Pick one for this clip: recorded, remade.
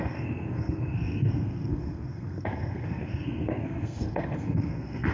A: remade